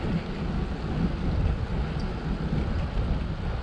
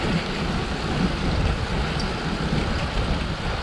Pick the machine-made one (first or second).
second